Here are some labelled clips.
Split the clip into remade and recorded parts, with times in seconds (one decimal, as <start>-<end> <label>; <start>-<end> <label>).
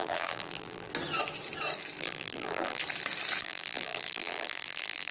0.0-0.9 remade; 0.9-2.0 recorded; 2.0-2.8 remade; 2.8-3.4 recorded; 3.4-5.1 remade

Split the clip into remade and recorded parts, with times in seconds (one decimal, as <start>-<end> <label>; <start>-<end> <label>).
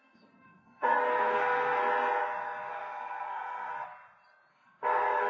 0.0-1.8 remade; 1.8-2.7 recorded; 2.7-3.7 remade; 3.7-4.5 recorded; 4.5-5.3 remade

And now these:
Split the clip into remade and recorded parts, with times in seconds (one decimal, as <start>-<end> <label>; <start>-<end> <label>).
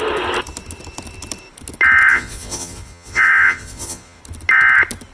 0.0-2.1 recorded; 2.1-4.2 remade; 4.2-5.1 recorded